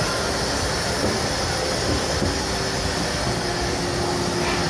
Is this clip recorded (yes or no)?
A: yes